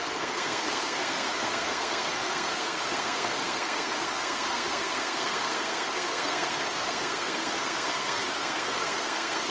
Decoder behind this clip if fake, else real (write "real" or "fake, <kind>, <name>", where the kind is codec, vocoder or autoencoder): fake, codec, SNAC